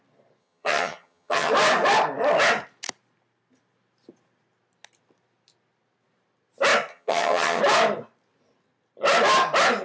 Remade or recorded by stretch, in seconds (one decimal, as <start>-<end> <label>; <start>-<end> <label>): 0.0-0.4 recorded; 0.4-1.5 remade; 1.5-6.9 recorded; 6.9-7.6 remade; 7.6-9.8 recorded